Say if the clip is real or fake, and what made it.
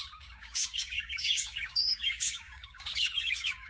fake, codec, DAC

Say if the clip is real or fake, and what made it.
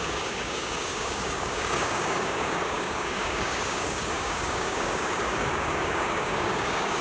fake, codec, DAC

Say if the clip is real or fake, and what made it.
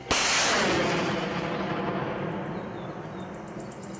real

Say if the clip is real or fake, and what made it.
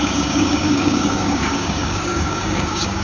fake, codec, DAC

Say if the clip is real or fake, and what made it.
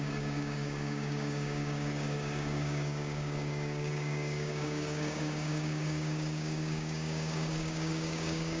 fake, codec, DAC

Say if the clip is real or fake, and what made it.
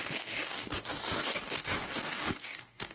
fake, codec, DAC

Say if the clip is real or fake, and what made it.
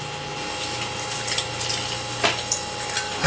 real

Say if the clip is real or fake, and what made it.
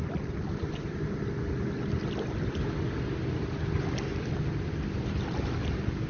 real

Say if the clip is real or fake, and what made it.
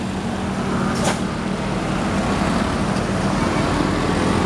real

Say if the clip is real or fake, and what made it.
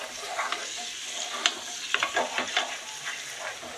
real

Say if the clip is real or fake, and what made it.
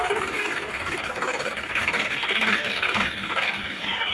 fake, codec, DAC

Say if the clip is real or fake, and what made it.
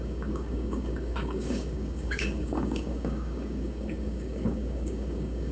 fake, codec, DAC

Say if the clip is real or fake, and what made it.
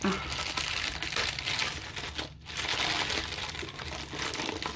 real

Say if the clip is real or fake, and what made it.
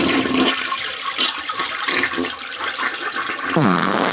real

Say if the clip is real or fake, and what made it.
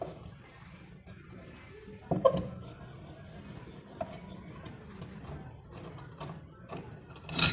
real